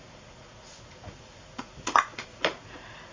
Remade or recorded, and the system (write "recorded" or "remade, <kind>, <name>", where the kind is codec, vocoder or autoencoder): remade, vocoder, Vocos